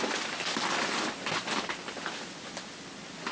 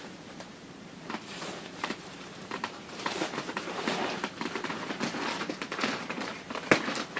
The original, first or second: first